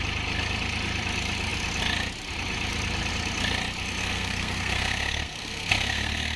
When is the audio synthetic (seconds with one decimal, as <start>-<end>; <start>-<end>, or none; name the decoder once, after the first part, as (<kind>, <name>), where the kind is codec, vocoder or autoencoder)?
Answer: 4.0-6.4 (codec, SNAC)